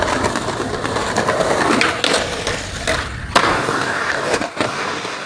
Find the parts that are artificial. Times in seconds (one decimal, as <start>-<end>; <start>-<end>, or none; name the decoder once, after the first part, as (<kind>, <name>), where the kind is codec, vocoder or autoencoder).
3.4-5.3 (codec, DAC)